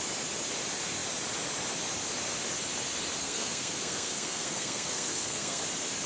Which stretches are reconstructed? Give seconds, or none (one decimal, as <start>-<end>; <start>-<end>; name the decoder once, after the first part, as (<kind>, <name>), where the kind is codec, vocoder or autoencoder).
3.2-5.6 (codec, SNAC)